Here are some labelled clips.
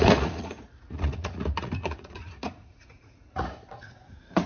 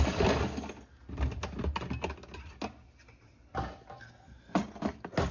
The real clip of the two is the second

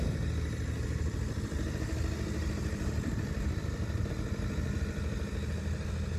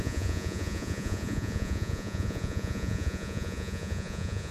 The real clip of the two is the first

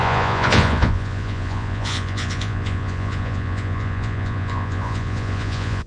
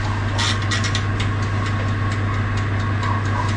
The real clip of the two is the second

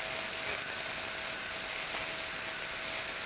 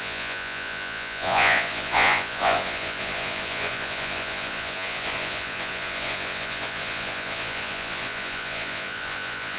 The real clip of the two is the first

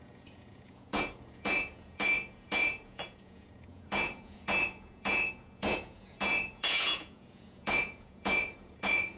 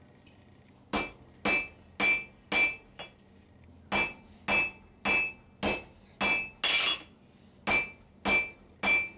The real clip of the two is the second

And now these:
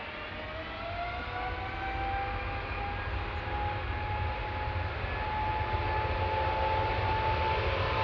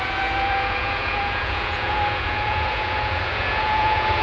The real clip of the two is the first